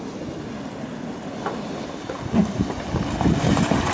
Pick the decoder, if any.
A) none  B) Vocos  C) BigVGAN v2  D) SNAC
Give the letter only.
A